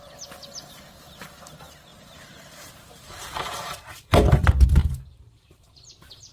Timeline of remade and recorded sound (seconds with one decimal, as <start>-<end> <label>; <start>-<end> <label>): 0.0-1.9 recorded; 1.9-4.2 remade; 4.2-4.8 recorded; 4.8-5.8 remade; 5.8-6.3 recorded